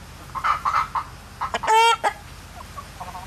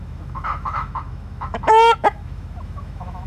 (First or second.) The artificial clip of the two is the second